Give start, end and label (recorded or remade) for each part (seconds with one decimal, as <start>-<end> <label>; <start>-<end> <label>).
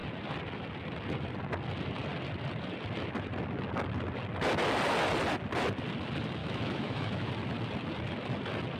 0.0-6.4 recorded; 6.4-7.3 remade; 7.3-8.8 recorded